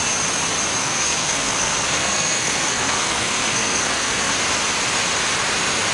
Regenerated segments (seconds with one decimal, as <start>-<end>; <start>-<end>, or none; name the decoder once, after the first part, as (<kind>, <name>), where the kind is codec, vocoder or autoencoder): 0.8-4.3 (codec, SNAC)